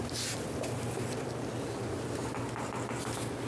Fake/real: real